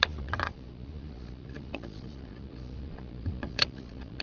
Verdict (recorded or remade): remade